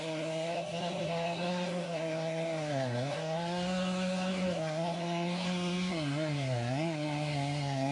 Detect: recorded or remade remade